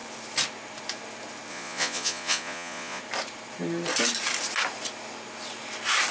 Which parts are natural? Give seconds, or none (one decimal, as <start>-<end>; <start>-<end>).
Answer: 0.0-1.5; 3.0-6.1